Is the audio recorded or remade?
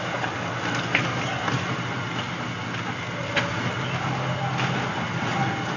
recorded